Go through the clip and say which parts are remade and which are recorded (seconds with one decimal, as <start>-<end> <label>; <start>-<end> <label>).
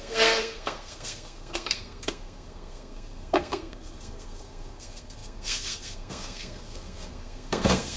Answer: 0.0-8.0 remade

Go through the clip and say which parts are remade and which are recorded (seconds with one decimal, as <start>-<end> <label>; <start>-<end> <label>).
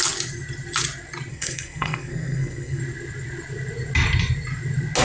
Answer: 0.0-1.3 recorded; 1.3-2.8 remade; 2.8-5.0 recorded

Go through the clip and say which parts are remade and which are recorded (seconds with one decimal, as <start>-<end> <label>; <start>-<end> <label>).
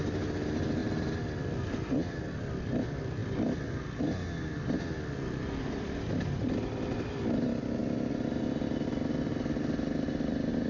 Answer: 0.0-10.7 recorded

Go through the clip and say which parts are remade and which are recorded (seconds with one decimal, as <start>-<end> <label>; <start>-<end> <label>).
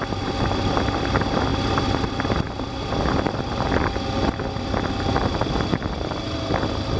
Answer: 0.0-7.0 recorded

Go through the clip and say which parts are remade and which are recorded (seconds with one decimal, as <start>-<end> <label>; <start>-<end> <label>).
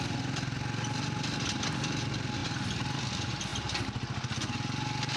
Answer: 0.0-5.2 recorded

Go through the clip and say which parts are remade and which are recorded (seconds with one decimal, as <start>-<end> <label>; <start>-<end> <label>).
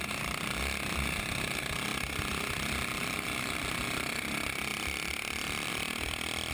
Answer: 0.0-1.9 recorded; 1.9-3.7 remade; 3.7-4.7 recorded; 4.7-5.7 remade; 5.7-6.5 recorded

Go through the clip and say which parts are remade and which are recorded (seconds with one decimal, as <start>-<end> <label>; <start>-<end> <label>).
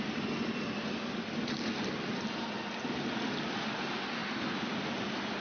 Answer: 0.0-5.4 recorded